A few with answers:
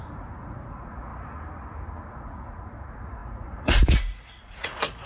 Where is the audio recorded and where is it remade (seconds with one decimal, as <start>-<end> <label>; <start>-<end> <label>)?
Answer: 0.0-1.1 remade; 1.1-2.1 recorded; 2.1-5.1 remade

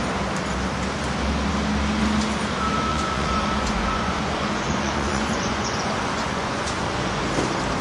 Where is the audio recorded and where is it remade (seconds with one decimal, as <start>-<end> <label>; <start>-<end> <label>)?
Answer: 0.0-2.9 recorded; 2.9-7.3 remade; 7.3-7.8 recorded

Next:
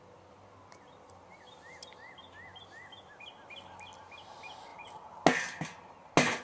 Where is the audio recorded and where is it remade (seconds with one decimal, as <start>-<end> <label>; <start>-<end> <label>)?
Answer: 0.0-6.4 recorded